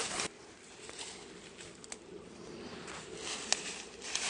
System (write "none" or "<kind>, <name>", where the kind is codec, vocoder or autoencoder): none